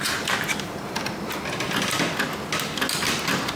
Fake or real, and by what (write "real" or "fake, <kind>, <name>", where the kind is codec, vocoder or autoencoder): real